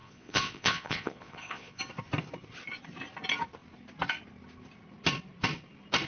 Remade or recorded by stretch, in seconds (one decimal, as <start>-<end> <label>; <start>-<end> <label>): 0.0-1.8 remade; 1.8-6.1 recorded